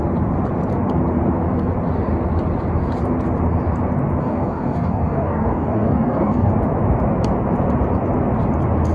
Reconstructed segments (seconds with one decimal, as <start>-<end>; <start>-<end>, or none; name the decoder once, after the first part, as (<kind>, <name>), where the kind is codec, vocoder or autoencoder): 4.2-6.5 (codec, DAC)